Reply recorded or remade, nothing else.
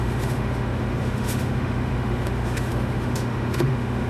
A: remade